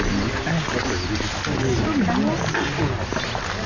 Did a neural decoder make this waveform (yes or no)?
no